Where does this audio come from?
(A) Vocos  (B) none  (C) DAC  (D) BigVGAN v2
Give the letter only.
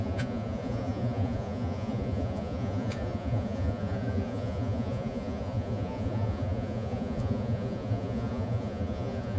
A